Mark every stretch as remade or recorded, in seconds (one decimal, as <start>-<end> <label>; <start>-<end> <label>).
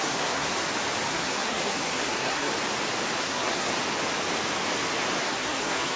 0.0-0.5 remade; 0.5-1.1 recorded; 1.1-2.5 remade; 2.5-3.2 recorded; 3.2-3.7 remade; 3.7-5.2 recorded; 5.2-6.0 remade